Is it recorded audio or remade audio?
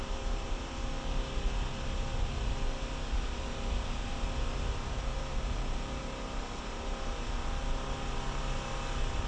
recorded